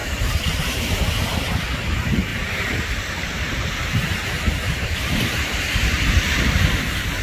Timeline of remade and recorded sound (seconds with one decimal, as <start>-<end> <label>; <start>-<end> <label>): 0.0-1.6 remade; 1.6-2.3 recorded; 2.3-6.6 remade; 6.6-7.2 recorded